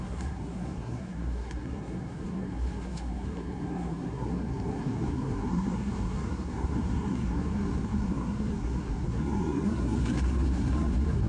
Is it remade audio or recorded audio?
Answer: remade